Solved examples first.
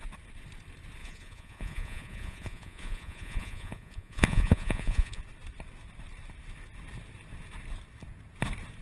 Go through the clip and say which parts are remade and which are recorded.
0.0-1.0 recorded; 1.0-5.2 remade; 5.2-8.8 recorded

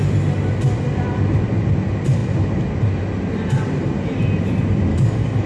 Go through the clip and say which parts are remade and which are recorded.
0.0-4.9 recorded; 4.9-5.5 remade